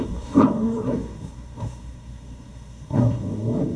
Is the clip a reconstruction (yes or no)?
yes